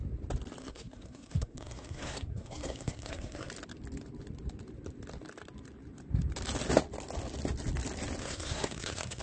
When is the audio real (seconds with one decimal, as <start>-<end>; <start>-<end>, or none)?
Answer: 0.0-0.6; 3.5-8.2